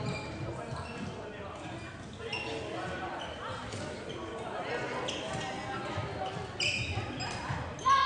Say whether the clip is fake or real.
real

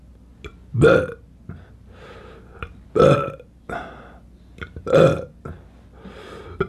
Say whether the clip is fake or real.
real